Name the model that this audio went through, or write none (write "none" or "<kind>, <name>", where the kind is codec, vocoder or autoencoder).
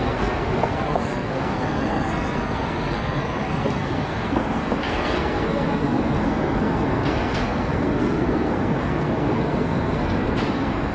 codec, SNAC